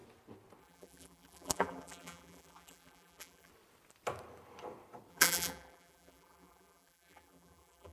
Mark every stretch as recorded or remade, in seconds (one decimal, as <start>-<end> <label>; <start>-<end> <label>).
0.0-0.6 recorded; 0.6-3.5 remade; 3.5-5.1 recorded; 5.1-7.9 remade